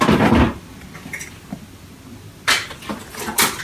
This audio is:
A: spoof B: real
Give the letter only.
B